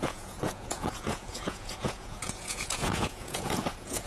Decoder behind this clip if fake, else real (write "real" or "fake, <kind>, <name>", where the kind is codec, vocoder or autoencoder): fake, vocoder, Vocos